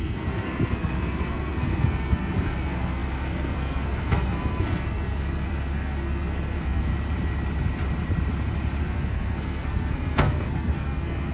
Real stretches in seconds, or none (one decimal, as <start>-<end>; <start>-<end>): 6.9-8.8